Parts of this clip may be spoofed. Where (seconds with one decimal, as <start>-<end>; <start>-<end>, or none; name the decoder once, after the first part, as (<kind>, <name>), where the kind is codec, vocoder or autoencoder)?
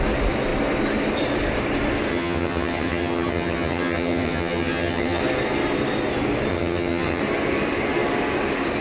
2.1-5.2 (vocoder, HiFi-GAN); 6.5-7.2